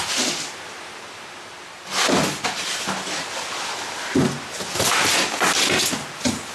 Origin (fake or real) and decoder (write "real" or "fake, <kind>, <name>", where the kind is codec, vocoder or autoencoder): real